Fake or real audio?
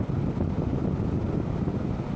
real